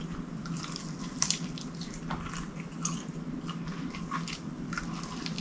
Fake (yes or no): no